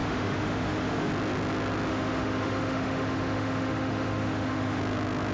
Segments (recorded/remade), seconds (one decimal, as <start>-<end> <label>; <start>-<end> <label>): 0.0-1.1 remade; 1.1-1.9 recorded; 1.9-4.8 remade; 4.8-5.3 recorded